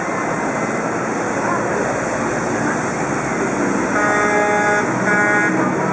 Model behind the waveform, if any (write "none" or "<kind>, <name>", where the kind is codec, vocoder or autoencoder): none